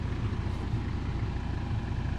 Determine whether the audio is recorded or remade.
recorded